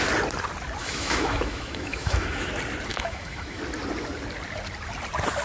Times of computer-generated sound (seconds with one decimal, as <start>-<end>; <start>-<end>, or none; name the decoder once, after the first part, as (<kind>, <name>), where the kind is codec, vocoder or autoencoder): 0.8-2.5 (autoencoder, DAC-VAE); 2.9-3.6